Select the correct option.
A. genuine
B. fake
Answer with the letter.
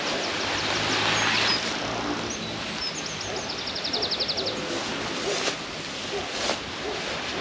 A